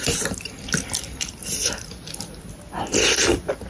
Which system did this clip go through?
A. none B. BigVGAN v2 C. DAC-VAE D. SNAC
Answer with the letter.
A